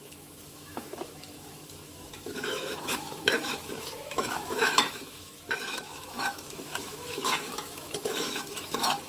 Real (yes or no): no